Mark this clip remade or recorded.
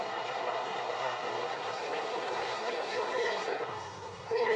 remade